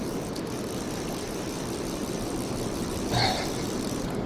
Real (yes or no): yes